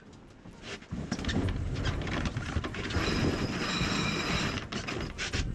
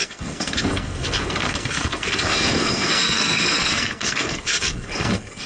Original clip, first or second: first